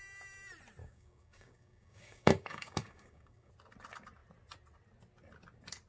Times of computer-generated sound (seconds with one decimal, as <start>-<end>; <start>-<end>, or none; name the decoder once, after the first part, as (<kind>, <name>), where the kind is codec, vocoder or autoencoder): 0.8-3.5 (codec, DAC)